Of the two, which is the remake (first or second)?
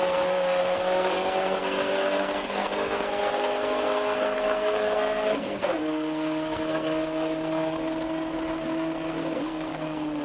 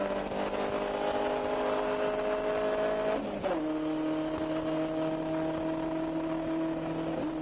first